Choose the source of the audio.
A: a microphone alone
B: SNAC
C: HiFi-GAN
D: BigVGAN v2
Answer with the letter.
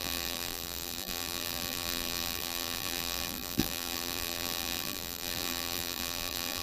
D